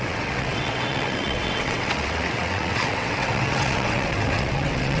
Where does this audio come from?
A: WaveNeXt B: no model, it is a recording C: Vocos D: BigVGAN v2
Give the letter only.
A